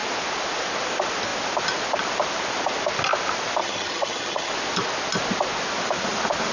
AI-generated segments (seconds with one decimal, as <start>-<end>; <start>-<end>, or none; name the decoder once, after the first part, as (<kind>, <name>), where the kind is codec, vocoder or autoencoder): 3.6-4.5 (vocoder, HiFi-GAN)